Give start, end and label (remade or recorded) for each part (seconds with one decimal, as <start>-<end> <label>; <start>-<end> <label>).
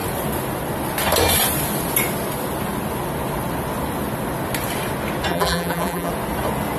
0.0-5.3 recorded; 5.3-6.1 remade; 6.1-6.8 recorded